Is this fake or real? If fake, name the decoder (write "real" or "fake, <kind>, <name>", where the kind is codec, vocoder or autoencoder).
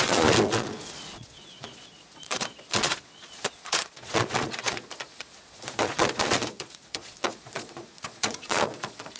fake, vocoder, Vocos